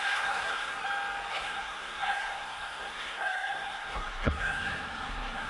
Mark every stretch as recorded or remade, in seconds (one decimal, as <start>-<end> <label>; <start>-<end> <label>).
0.0-0.8 remade; 0.8-1.3 recorded; 1.3-5.5 remade